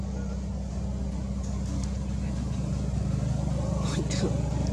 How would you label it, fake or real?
real